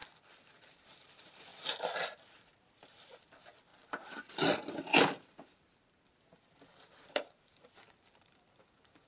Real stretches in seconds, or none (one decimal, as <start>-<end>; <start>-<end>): 0.0-0.5; 1.5-2.5; 3.7-7.1